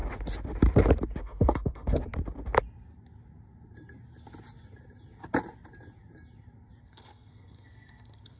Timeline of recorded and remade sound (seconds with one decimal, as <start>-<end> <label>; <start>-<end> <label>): 0.0-1.2 recorded; 1.2-2.0 remade; 2.0-6.8 recorded; 6.8-8.4 remade